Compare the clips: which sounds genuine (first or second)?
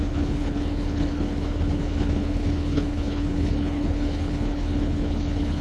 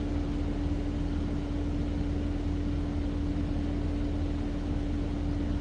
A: second